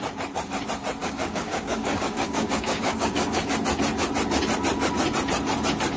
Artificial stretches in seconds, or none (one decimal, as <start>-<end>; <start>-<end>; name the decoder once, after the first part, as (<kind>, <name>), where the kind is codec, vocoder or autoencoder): 1.0-3.5 (codec, DAC)